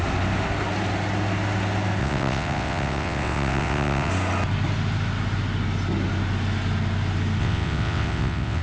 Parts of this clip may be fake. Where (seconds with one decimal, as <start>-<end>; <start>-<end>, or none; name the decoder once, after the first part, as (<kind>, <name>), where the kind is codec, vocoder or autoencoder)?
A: 2.0-4.1 (vocoder, WaveNeXt); 7.4-8.6